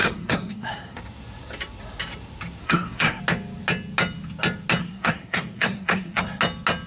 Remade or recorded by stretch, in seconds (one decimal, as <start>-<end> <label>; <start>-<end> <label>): 0.0-1.0 remade; 1.0-2.6 recorded; 2.6-3.2 remade; 3.2-4.8 recorded; 4.8-6.2 remade; 6.2-6.9 recorded